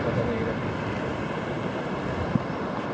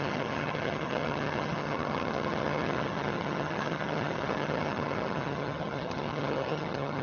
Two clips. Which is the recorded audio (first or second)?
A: first